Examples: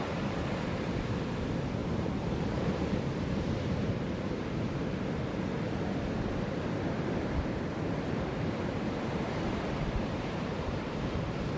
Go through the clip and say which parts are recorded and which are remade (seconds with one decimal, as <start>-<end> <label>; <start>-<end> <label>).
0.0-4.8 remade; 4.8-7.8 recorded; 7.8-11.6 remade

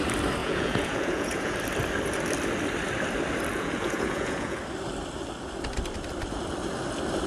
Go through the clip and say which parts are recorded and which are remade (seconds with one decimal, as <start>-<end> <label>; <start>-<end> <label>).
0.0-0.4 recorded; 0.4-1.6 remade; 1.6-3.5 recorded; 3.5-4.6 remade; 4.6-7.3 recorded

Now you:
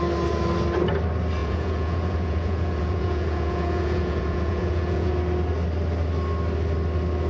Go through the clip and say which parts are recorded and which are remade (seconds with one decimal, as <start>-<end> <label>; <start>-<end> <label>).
0.0-1.4 recorded; 1.4-5.1 remade; 5.1-7.3 recorded

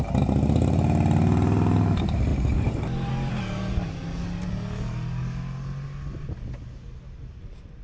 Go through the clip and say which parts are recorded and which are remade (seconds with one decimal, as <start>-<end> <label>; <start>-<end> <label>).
0.0-2.3 recorded; 2.3-3.1 remade; 3.1-7.8 recorded

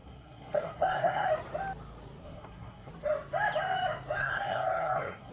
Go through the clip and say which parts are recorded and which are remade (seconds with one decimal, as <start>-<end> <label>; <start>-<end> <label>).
0.0-1.3 remade; 1.3-2.2 recorded; 2.2-2.9 remade; 2.9-4.2 recorded; 4.2-5.3 remade

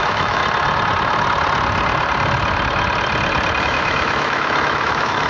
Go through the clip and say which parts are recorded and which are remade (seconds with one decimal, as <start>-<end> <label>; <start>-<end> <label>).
0.0-0.4 remade; 0.4-3.6 recorded; 3.6-5.3 remade